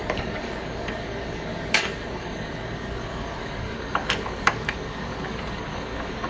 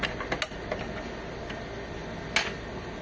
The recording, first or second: second